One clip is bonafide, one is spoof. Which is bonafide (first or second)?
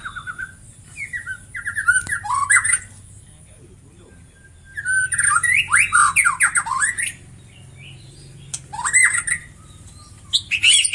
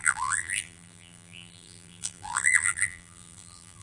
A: first